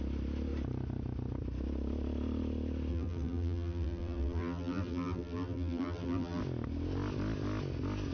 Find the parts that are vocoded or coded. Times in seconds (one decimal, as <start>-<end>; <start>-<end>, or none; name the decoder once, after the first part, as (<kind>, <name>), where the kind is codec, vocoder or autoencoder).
2.9-6.4 (vocoder, BigVGAN v2)

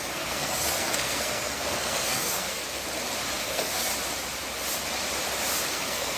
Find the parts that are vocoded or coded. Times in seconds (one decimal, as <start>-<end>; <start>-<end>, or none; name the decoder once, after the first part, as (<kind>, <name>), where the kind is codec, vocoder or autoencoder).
0.0-2.8 (codec, SNAC); 3.4-3.9; 5.7-6.2

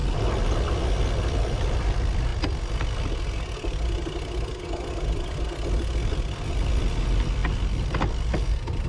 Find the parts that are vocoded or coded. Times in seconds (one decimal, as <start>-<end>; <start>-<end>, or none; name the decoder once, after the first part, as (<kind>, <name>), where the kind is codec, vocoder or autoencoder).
none

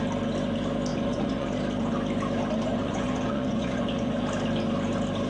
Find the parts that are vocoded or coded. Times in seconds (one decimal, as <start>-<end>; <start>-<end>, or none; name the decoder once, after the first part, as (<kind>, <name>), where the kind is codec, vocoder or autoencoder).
0.9-1.5 (vocoder, Vocos); 2.7-4.1

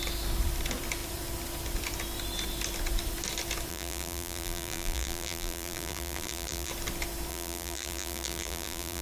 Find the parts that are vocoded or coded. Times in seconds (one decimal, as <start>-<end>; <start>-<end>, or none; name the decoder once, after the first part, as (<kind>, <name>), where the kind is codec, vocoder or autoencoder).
3.7-6.7 (vocoder, BigVGAN v2); 7.3-9.0